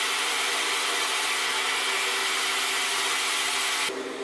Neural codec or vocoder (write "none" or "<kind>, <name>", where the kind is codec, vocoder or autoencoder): none